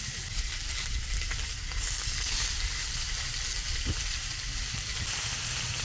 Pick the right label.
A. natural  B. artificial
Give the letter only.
A